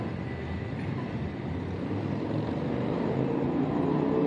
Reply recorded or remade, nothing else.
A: recorded